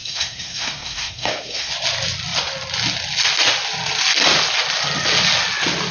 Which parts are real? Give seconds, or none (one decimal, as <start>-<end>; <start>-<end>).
1.7-5.9